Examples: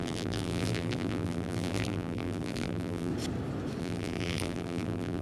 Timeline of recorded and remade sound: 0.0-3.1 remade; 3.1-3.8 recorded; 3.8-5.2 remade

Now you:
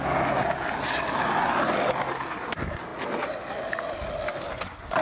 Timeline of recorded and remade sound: 0.0-5.0 recorded

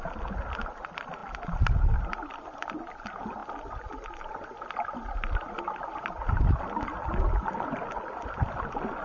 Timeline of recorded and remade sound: 0.0-9.0 recorded

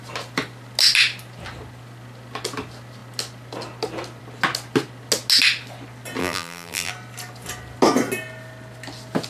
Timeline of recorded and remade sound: 0.0-6.2 recorded; 6.2-6.9 remade; 6.9-9.3 recorded

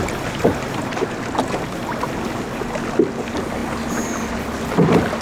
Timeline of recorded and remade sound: 0.0-5.2 recorded

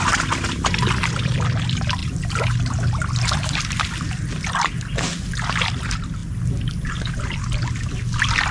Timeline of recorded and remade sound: 0.0-8.5 recorded

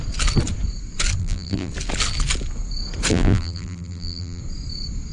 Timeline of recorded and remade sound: 0.0-1.2 recorded; 1.2-1.7 remade; 1.7-3.1 recorded; 3.1-4.4 remade; 4.4-5.1 recorded

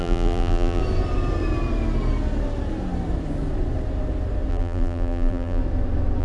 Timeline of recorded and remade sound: 0.0-0.8 remade; 0.8-4.5 recorded; 4.5-5.6 remade; 5.6-6.2 recorded